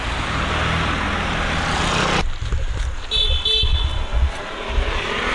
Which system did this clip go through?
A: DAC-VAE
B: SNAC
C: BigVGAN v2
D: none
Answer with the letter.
D